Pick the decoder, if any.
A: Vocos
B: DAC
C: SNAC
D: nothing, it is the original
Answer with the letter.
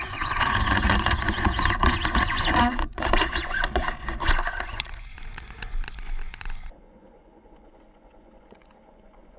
A